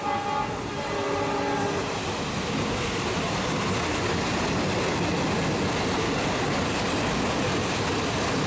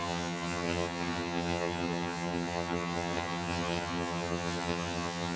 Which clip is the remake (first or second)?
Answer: second